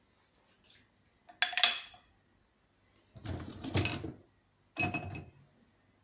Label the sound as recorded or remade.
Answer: recorded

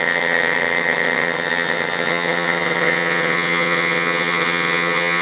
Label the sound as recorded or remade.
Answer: remade